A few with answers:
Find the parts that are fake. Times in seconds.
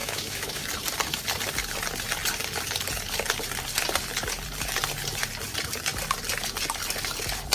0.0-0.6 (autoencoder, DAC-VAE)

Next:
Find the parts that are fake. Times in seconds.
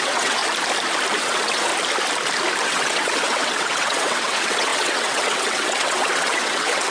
0.0-0.4 (vocoder, WaveNeXt); 1.1-1.7; 2.6-6.9